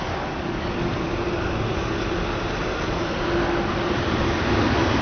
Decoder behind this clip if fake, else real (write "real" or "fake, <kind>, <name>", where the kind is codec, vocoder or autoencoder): real